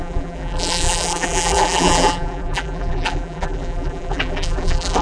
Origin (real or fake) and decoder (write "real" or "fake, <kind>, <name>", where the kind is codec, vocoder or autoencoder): fake, vocoder, BigVGAN v2